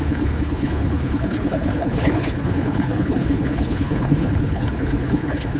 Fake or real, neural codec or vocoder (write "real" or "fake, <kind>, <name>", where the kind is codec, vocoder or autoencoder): fake, codec, HILCodec